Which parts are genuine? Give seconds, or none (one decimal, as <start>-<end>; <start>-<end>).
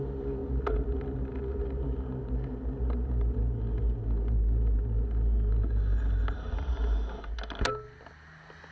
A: 0.0-8.7